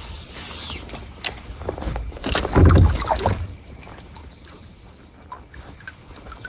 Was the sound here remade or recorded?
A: recorded